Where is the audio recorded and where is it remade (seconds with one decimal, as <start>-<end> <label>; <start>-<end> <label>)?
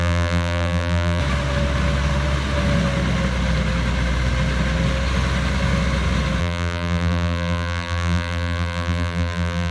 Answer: 0.0-1.2 remade; 1.2-6.4 recorded; 6.4-9.7 remade